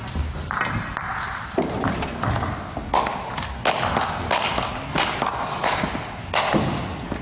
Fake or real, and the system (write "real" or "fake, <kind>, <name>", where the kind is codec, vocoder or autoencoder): real